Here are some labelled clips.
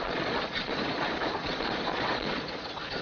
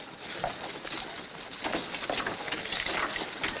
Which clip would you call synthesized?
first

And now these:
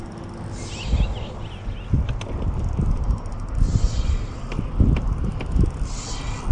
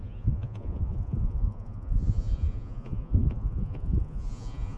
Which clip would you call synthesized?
second